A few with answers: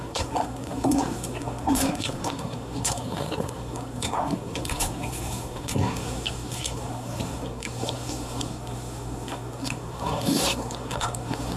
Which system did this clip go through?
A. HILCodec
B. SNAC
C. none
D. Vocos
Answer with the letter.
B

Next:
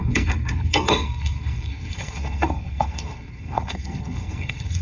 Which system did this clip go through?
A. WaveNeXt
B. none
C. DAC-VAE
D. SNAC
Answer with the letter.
D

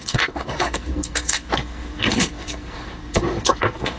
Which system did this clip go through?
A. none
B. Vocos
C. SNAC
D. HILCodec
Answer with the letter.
C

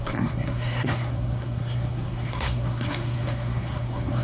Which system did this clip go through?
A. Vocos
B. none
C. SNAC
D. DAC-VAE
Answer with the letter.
C